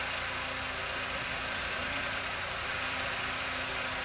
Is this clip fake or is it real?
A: fake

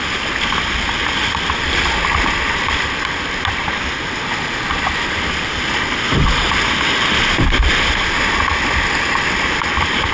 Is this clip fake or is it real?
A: real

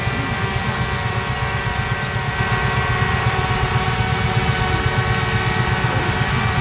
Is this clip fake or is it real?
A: real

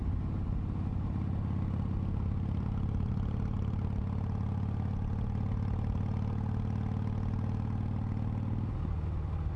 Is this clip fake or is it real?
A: real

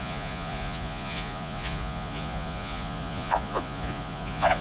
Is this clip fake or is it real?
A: fake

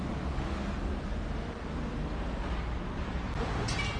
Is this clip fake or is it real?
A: real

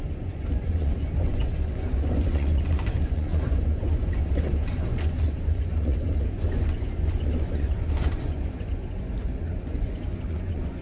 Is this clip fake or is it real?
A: fake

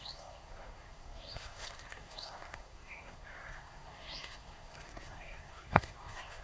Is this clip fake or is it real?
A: fake